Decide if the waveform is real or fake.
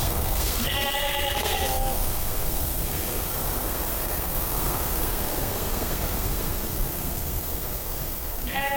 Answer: fake